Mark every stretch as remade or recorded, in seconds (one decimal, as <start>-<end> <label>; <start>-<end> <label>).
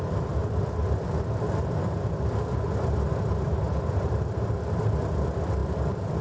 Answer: 0.0-6.2 recorded